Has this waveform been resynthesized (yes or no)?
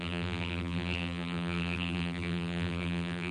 yes